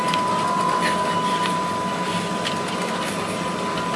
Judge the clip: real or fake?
real